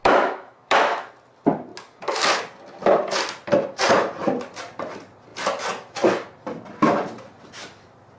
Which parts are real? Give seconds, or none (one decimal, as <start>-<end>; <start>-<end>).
1.1-8.2